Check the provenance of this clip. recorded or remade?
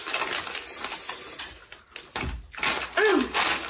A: recorded